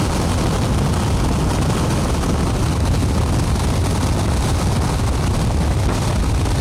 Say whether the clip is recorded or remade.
recorded